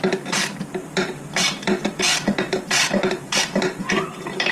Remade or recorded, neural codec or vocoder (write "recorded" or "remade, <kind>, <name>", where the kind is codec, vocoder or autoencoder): remade, vocoder, BigVGAN v2